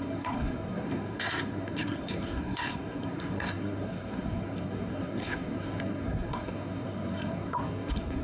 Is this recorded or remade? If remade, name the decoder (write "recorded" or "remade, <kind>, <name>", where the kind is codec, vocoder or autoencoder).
remade, codec, SNAC